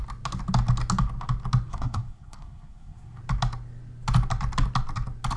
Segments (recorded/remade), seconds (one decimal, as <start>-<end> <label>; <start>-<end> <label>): 0.0-1.7 recorded; 1.7-3.2 remade; 3.2-5.4 recorded